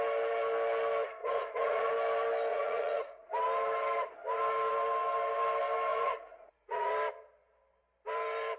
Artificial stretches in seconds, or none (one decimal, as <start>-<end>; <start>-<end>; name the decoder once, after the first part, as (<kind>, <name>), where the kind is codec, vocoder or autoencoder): 1.2-1.9 (vocoder, Vocos); 2.5-3.3; 5.9-6.9